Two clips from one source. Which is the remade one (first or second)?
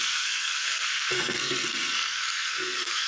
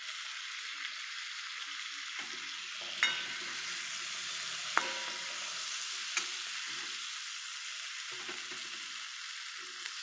first